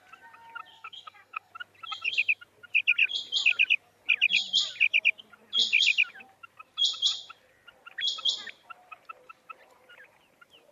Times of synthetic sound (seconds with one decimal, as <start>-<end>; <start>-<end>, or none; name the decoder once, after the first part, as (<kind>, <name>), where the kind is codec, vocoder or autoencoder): 0.7-1.5 (codec, SNAC)